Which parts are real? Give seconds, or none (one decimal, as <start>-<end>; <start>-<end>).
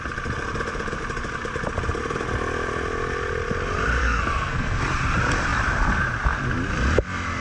0.0-4.0; 4.8-7.4